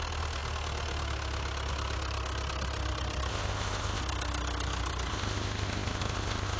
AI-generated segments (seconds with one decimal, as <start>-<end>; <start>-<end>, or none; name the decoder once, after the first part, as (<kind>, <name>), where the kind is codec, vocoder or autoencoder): 3.3-4.0 (codec, ZipCodec); 5.1-6.6